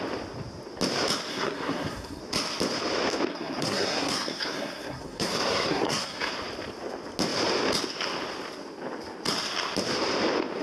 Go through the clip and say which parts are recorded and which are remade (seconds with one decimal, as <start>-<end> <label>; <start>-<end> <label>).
0.0-1.3 recorded; 1.3-2.2 remade; 2.2-3.3 recorded; 3.3-6.3 remade; 6.3-10.6 recorded